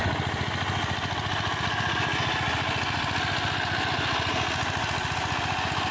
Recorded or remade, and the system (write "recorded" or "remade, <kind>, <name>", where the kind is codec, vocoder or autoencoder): recorded